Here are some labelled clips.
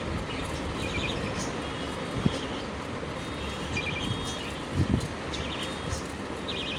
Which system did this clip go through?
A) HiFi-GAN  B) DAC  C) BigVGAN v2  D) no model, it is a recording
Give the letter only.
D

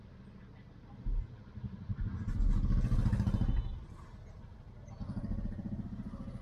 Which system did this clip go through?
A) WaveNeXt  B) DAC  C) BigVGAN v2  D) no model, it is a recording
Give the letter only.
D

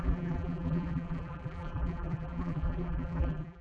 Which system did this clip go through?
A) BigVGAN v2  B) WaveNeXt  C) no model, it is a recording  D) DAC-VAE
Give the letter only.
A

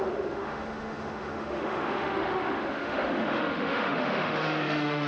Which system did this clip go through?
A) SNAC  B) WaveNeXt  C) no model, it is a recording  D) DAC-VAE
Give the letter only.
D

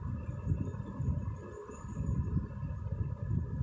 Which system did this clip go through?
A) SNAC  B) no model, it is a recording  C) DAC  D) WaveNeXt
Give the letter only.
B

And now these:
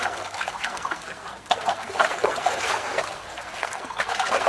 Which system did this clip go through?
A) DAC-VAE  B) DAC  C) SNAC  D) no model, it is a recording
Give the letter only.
C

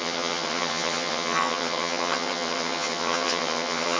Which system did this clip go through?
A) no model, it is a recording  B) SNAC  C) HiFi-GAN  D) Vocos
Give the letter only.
C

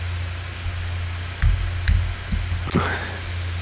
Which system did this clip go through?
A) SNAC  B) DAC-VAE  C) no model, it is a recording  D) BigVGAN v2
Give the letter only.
C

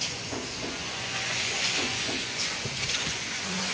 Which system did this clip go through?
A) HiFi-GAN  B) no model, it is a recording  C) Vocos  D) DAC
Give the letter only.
C